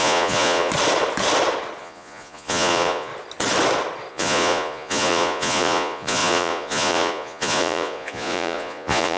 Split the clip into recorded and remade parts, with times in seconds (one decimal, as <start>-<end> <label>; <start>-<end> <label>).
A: 0.0-0.7 remade; 0.7-1.8 recorded; 1.8-3.1 remade; 3.1-4.1 recorded; 4.1-9.2 remade